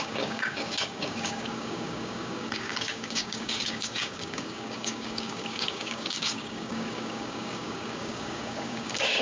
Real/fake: fake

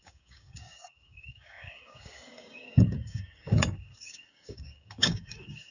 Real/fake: fake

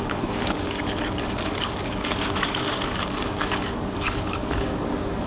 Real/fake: fake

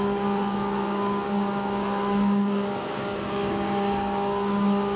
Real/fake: fake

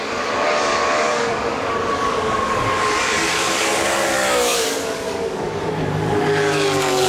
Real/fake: fake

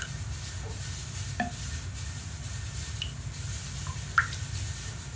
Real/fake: real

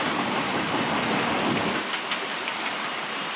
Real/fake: real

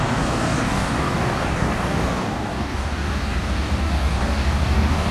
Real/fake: fake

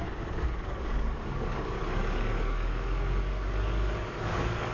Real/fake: fake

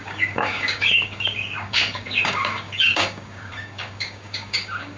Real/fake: fake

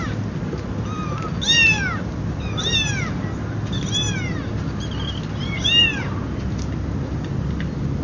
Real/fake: real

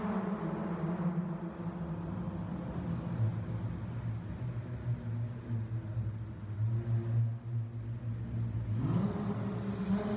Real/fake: real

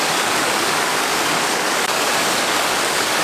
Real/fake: fake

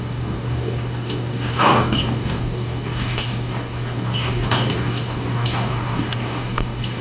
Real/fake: fake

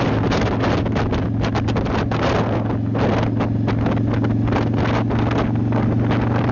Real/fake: real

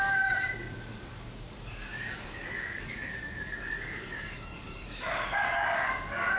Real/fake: fake